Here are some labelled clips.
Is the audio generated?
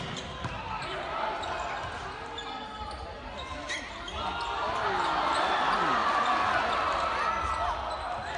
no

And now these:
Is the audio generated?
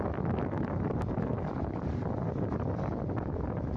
no